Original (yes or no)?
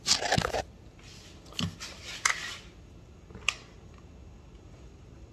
yes